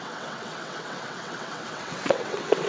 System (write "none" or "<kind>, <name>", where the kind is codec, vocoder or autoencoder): vocoder, WaveNeXt